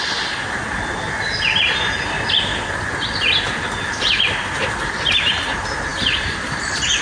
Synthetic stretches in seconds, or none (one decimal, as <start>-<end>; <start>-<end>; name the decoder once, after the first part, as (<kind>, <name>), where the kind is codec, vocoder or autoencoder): 5.9-7.0 (vocoder, BigVGAN v2)